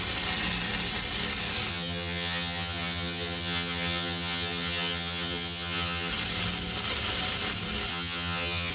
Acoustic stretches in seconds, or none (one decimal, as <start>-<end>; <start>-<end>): 0.0-1.7; 6.1-7.9